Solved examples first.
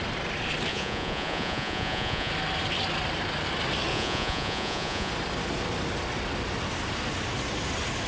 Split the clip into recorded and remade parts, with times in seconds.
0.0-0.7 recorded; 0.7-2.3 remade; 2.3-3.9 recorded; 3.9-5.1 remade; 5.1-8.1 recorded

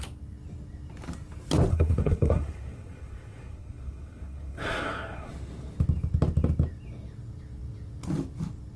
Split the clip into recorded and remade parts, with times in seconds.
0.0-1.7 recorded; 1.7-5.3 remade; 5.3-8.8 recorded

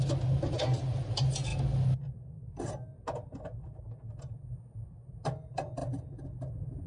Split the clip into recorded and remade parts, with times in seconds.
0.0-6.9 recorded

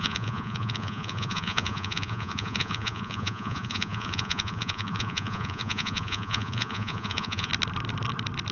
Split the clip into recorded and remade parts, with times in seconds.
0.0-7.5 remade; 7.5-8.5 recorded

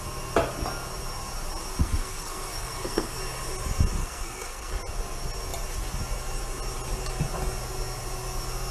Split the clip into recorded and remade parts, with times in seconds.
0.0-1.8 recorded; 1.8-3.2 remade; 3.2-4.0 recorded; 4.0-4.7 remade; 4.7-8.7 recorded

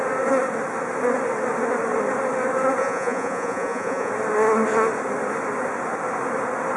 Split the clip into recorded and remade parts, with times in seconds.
0.0-2.8 recorded; 2.8-4.1 remade; 4.1-6.8 recorded

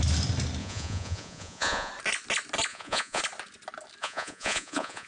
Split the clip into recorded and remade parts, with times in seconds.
0.0-0.6 recorded; 0.6-1.9 remade; 1.9-2.7 recorded; 2.7-3.2 remade; 3.2-4.0 recorded; 4.0-5.1 remade